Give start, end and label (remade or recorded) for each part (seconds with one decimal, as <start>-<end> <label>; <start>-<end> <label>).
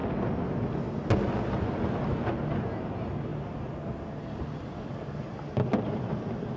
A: 0.0-6.6 recorded